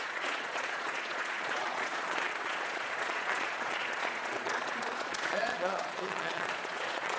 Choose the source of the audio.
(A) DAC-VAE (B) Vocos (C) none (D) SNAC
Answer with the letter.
B